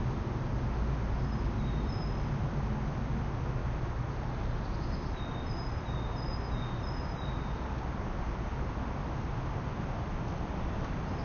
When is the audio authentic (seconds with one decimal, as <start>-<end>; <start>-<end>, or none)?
0.0-11.2